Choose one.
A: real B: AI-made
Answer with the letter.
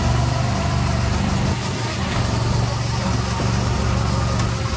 A